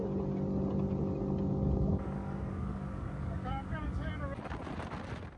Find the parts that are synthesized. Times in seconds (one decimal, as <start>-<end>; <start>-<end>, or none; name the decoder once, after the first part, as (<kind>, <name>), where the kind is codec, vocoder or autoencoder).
1.9-4.1 (codec, DAC)

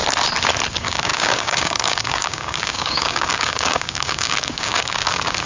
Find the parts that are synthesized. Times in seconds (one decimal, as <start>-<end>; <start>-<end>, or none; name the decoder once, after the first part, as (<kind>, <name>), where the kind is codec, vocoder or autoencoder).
0.7-5.5 (codec, DAC)

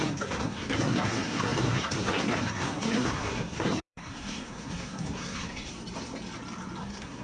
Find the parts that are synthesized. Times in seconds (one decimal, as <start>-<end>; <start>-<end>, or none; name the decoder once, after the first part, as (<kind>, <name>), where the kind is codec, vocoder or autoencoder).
0.0-5.7 (codec, SNAC); 6.8-7.2